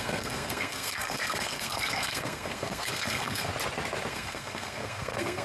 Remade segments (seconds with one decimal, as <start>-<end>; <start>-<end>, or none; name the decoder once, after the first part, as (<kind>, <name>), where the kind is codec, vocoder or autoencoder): 0.0-3.5 (codec, SNAC); 4.1-5.4